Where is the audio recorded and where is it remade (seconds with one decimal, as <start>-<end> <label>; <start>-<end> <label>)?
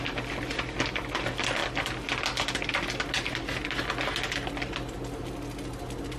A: 0.0-6.2 recorded